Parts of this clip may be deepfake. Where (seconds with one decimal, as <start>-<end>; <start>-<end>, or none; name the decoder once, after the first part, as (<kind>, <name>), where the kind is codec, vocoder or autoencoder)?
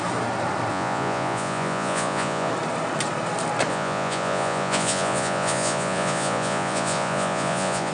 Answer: 0.7-2.5 (vocoder, Vocos); 3.7-7.9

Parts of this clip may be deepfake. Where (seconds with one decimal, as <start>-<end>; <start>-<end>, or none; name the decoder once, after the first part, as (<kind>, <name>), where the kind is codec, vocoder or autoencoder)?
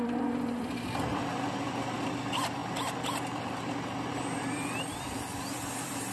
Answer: 0.0-2.6 (vocoder, BigVGAN v2); 4.1-6.1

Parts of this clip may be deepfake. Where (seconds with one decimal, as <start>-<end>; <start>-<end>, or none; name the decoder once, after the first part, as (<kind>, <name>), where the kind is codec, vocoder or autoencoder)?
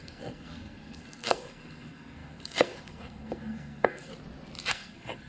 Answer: 0.0-4.1 (codec, SNAC); 4.7-5.3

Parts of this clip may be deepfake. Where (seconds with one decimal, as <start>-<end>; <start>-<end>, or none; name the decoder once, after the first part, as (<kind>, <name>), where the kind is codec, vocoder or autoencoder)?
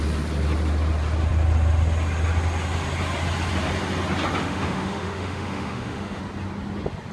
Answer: 4.4-6.2 (autoencoder, DAC-VAE)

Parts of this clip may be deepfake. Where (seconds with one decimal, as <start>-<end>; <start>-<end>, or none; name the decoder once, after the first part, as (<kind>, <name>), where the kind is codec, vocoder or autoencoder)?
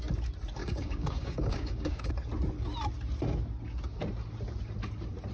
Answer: 0.6-2.1 (codec, DAC)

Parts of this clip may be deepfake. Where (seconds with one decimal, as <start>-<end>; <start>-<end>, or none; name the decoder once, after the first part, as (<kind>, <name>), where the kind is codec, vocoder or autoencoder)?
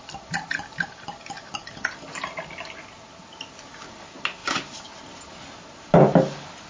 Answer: none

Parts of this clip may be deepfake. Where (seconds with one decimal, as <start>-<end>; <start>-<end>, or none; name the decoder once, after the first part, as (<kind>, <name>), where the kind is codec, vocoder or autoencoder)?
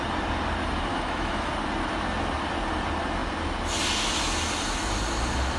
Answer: 0.9-1.5 (autoencoder, DAC-VAE)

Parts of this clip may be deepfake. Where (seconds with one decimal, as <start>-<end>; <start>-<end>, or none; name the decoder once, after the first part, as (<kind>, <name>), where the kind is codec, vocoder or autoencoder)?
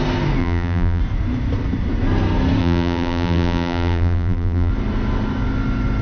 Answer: 0.4-1.0 (vocoder, BigVGAN v2); 2.6-4.7